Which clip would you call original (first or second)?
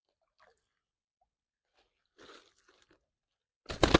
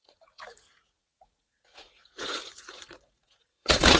first